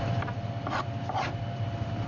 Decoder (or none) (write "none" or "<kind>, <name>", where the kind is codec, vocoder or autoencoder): vocoder, BigVGAN v2